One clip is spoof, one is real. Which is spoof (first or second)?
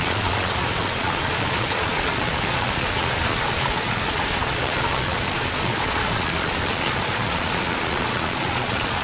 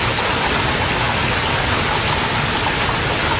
first